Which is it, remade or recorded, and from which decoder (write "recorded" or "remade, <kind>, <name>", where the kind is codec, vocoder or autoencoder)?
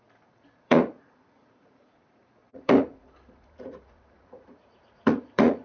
remade, vocoder, Vocos